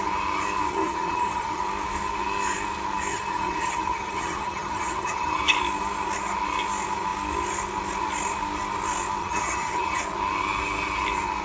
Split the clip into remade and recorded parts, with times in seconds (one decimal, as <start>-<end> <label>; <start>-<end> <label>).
0.0-0.7 recorded; 0.7-1.6 remade; 1.6-3.1 recorded; 3.1-5.4 remade; 5.4-9.2 recorded; 9.2-10.0 remade; 10.0-11.4 recorded